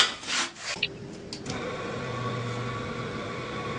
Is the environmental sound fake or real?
real